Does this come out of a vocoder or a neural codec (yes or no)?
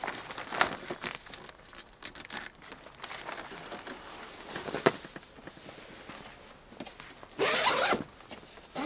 no